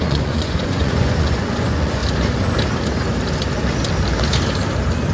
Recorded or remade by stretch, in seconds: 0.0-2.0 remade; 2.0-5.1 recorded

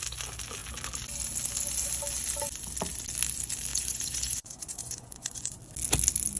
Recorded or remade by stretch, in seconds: 0.0-3.7 recorded; 3.7-5.6 remade; 5.6-6.4 recorded

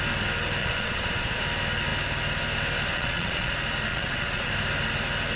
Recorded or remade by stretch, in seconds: 0.0-0.6 recorded; 0.6-1.4 remade; 1.4-2.9 recorded; 2.9-3.5 remade; 3.5-3.9 recorded; 3.9-4.5 remade; 4.5-5.4 recorded